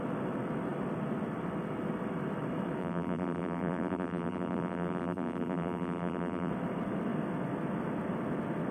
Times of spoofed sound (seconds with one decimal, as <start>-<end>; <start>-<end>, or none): 2.8-6.5